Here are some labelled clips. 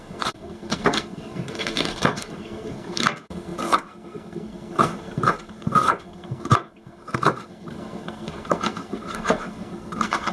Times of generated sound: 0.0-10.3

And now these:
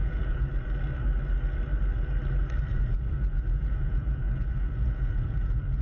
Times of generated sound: 0.0-0.5; 2.7-5.8

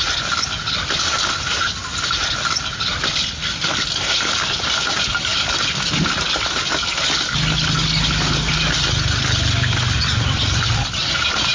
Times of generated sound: 5.3-6.0; 10.0-10.9